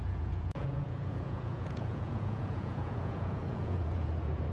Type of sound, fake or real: fake